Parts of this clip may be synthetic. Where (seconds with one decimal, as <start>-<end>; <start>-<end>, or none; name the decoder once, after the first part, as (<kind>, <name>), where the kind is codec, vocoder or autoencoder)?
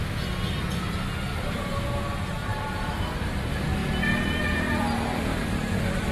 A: 1.3-1.8 (vocoder, BigVGAN v2); 2.4-3.3